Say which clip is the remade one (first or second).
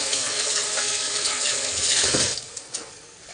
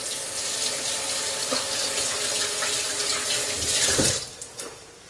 first